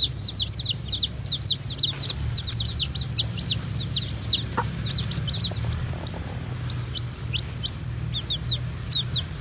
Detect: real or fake real